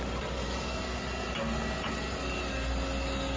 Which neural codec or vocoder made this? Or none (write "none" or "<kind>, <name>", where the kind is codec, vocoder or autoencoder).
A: none